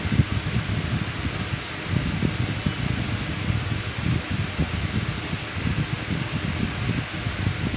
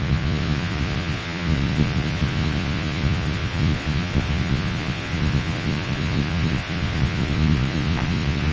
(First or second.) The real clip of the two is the first